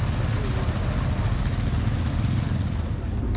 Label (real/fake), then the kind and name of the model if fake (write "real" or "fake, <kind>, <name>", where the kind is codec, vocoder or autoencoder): real